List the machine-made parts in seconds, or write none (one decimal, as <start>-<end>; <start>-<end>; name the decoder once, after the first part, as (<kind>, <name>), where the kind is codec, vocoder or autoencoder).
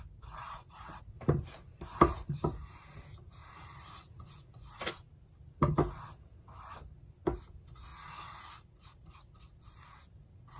0.4-1.0 (vocoder, Vocos); 3.4-4.9; 7.9-9.6